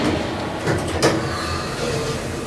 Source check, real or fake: real